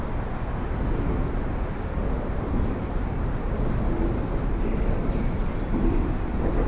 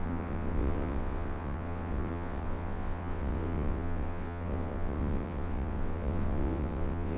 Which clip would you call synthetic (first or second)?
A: second